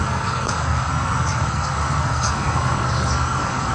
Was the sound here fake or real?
fake